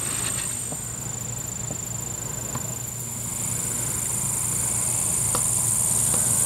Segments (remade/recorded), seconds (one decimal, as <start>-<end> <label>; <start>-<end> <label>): 0.0-6.5 recorded